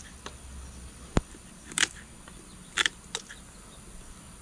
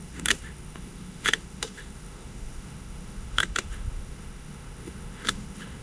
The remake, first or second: second